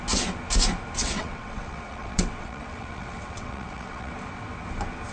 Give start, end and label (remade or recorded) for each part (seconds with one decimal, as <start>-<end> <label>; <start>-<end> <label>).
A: 0.0-1.0 recorded; 1.0-4.1 remade; 4.1-5.1 recorded